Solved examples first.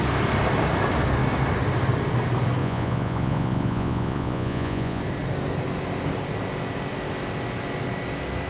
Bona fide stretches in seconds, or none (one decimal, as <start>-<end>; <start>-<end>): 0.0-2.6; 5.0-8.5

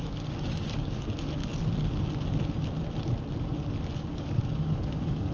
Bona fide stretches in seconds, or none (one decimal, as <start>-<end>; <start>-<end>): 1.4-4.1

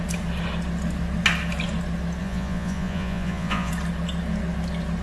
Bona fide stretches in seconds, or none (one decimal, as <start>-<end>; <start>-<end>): 0.0-2.2; 3.7-5.0

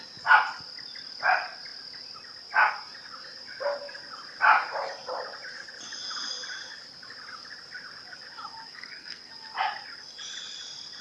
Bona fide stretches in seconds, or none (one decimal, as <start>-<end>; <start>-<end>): 0.0-8.7; 9.3-11.0